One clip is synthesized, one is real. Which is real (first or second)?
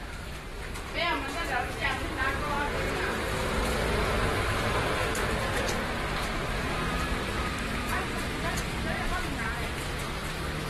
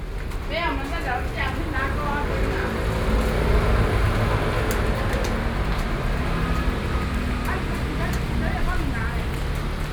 second